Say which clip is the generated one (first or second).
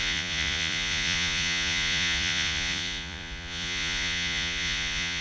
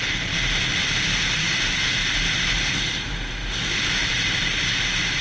first